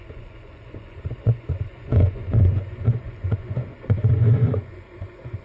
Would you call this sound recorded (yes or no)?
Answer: no